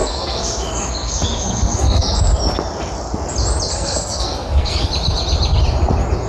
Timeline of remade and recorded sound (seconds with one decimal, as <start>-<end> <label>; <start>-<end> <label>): 0.0-2.2 remade; 2.2-3.7 recorded; 3.7-4.9 remade; 4.9-6.3 recorded